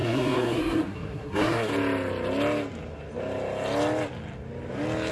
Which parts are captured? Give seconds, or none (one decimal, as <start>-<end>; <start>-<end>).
1.7-5.1